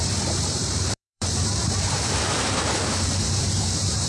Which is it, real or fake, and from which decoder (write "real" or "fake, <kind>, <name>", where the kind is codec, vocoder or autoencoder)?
fake, vocoder, BigVGAN v2